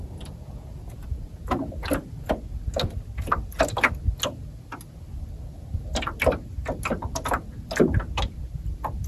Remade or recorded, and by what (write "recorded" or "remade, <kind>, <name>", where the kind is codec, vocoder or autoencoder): recorded